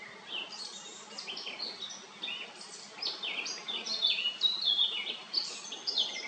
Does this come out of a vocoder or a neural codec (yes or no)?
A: no